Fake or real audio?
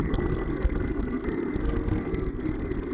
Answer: fake